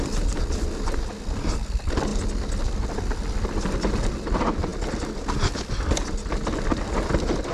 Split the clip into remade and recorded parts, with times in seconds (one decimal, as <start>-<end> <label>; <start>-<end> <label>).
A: 0.0-7.5 recorded